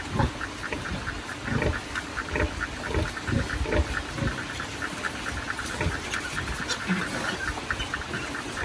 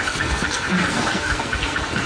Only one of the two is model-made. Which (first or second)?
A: second